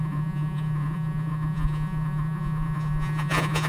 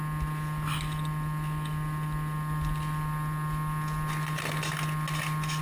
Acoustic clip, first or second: second